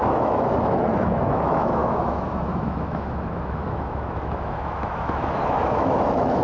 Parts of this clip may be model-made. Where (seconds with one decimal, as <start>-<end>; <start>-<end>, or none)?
0.0-6.4